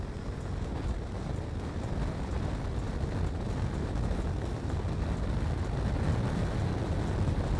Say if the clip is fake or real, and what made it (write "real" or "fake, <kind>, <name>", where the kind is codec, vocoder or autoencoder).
real